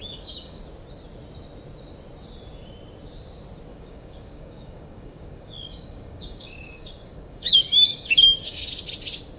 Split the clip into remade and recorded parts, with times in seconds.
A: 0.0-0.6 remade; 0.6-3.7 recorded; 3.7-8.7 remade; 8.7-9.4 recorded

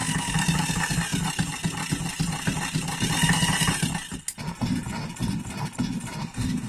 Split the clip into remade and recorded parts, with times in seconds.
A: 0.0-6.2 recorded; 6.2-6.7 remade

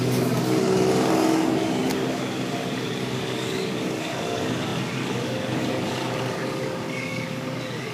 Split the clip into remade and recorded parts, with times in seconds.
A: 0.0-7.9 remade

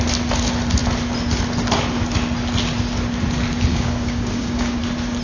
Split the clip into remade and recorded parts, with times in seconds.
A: 0.0-3.7 recorded; 3.7-4.8 remade; 4.8-5.2 recorded

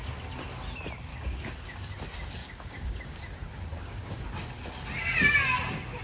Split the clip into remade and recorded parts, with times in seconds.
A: 0.0-1.1 recorded; 1.1-1.9 remade; 1.9-2.4 recorded; 2.4-3.2 remade; 3.2-3.7 recorded; 3.7-4.2 remade; 4.2-6.0 recorded

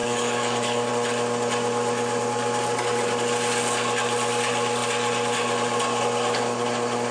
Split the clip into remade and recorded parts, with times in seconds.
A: 0.0-0.9 remade; 0.9-7.1 recorded

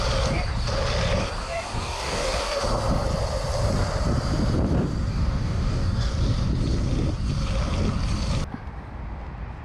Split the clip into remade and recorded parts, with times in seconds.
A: 0.0-1.4 recorded; 1.4-2.6 remade; 2.6-5.1 recorded; 5.1-6.1 remade; 6.1-9.6 recorded

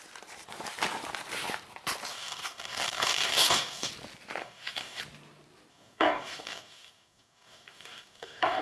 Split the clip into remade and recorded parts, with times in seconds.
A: 0.0-2.1 recorded; 2.1-3.9 remade; 3.9-4.4 recorded; 4.4-5.0 remade; 5.0-5.7 recorded; 5.7-8.6 remade